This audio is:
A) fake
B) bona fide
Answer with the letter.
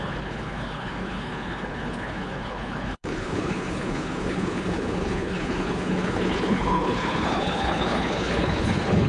A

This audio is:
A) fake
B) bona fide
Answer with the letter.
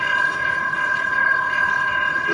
A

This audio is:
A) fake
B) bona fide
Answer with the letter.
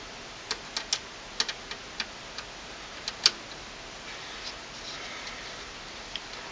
B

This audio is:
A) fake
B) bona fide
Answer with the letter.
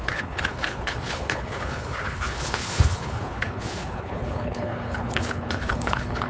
A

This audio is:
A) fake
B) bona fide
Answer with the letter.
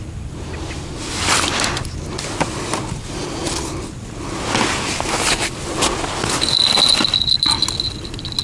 B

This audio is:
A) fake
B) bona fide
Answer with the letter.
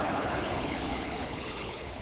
A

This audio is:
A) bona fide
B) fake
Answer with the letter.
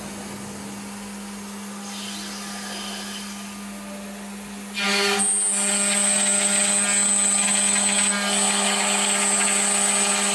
A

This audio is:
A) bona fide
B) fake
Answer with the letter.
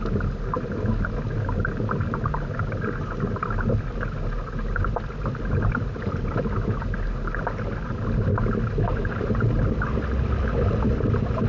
A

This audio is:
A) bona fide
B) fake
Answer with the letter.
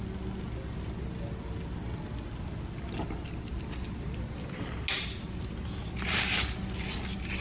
A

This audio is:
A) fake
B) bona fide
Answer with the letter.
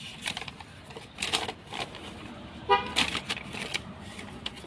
B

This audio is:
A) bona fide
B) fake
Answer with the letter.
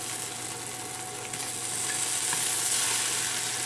A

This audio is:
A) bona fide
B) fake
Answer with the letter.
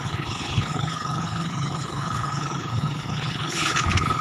B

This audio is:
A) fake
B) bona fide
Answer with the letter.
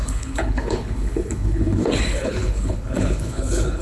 A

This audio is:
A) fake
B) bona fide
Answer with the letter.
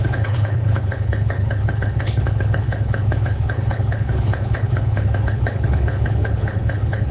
A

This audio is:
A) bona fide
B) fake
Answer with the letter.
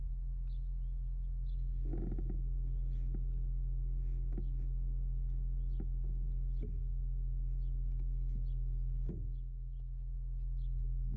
A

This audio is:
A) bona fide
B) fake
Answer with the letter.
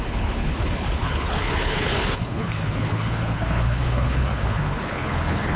B